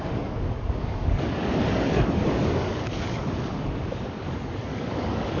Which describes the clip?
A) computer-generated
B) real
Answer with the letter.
A